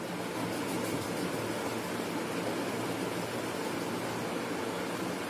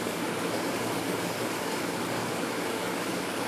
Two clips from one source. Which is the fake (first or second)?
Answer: second